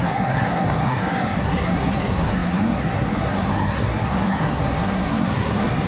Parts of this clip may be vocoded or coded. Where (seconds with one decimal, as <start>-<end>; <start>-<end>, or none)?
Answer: 0.0-5.9